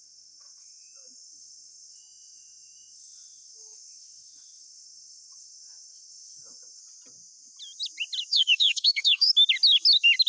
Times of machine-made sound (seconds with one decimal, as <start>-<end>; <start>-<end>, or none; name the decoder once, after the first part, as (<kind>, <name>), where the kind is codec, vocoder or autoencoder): 0.0-6.8 (autoencoder, DAC-VAE); 8.3-9.3